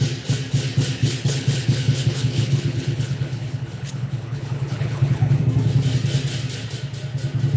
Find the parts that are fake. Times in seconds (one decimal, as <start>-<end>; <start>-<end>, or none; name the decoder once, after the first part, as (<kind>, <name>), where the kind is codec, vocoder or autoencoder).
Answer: 1.0-5.4 (codec, HILCodec)